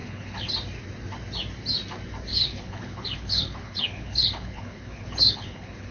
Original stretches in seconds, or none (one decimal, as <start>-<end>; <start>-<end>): 0.5-2.3